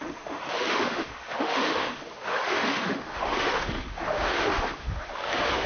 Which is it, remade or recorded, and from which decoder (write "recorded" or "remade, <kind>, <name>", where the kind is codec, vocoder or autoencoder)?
remade, autoencoder, DAC-VAE